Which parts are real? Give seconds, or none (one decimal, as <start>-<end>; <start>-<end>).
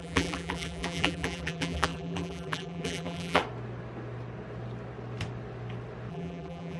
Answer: 3.4-6.1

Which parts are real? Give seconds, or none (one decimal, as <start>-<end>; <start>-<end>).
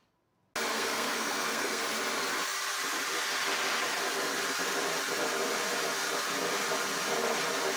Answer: 0.0-0.7; 1.8-7.8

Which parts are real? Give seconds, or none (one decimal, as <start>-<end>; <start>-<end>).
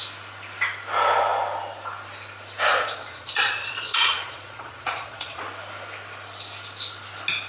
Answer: 0.0-2.7; 5.4-7.5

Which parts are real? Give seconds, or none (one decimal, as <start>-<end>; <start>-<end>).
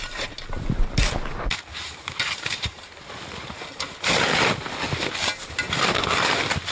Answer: 0.0-1.7; 4.2-6.7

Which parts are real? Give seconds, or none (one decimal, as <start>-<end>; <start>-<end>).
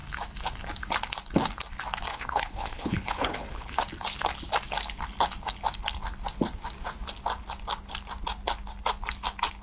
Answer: 0.0-2.1; 3.8-9.6